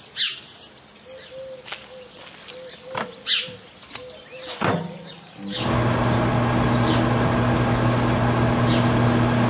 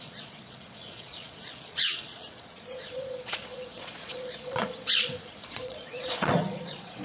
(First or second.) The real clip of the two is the first